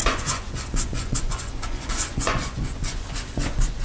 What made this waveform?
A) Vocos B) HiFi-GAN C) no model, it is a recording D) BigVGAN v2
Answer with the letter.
A